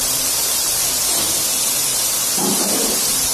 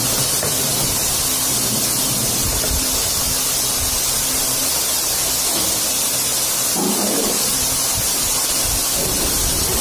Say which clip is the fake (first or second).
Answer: first